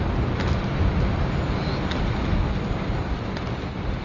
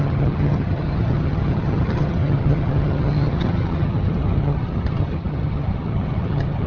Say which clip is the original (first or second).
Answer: first